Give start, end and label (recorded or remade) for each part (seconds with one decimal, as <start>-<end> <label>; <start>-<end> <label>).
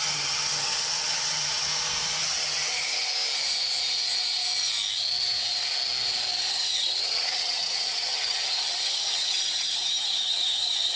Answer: 0.0-1.7 remade; 1.7-2.2 recorded; 2.2-3.1 remade; 3.1-6.5 recorded; 6.5-11.0 remade